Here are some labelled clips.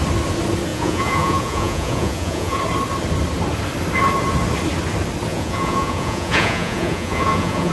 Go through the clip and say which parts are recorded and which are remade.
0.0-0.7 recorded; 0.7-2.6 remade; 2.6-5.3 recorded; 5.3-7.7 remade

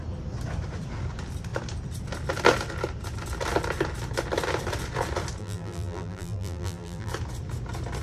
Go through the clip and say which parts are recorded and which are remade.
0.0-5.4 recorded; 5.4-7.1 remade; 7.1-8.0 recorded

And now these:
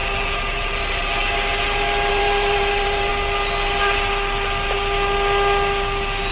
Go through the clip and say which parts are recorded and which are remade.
0.0-2.1 recorded; 2.1-3.1 remade; 3.1-6.3 recorded

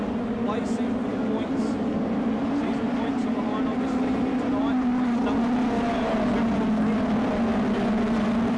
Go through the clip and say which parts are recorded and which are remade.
0.0-8.6 recorded

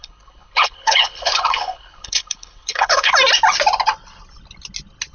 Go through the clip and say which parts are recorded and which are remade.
0.0-3.1 remade; 3.1-5.1 recorded

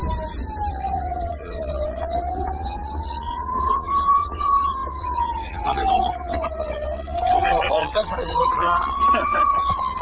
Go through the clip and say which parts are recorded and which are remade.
0.0-0.7 recorded; 0.7-10.0 remade

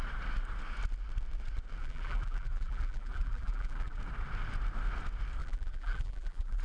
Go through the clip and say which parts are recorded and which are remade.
0.0-1.8 recorded; 1.8-4.0 remade; 4.0-5.4 recorded; 5.4-6.6 remade